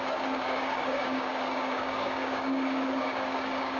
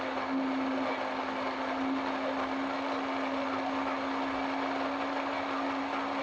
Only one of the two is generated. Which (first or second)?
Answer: first